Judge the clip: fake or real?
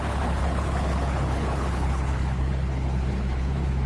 fake